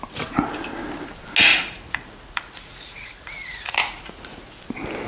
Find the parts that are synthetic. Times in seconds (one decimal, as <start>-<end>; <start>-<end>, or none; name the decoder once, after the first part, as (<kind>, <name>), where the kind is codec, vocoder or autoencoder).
1.5-4.6 (vocoder, Vocos)